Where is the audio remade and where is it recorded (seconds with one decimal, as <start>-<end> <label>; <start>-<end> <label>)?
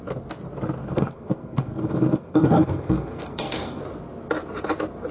0.0-0.8 recorded; 0.8-3.8 remade; 3.8-5.1 recorded